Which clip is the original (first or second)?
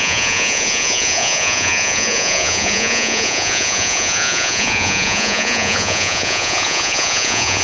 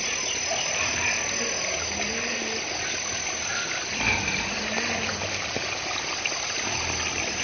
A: second